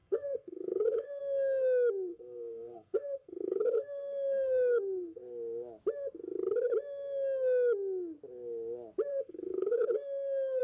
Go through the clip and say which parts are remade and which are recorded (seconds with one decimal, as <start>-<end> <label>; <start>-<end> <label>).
0.0-1.2 remade; 1.2-2.1 recorded; 2.1-5.2 remade; 5.2-9.1 recorded; 9.1-10.6 remade